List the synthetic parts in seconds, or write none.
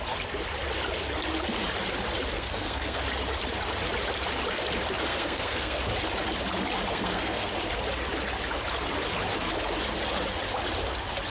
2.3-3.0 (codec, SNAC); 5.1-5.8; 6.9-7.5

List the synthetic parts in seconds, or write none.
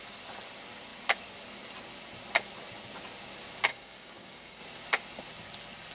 3.7-4.6 (codec, DAC)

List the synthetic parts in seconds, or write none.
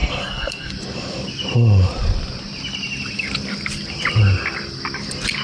0.0-0.7 (codec, SNAC)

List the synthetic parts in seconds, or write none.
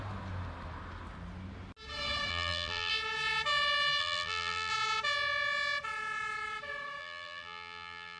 2.3-2.9 (vocoder, BigVGAN v2); 4.0-4.7; 7.0-8.2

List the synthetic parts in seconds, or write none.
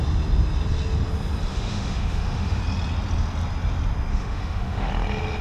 1.5-2.6 (autoencoder, DAC-VAE); 4.1-4.9